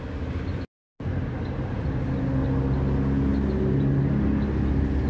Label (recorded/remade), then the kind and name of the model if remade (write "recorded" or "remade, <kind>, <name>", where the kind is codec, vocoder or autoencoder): recorded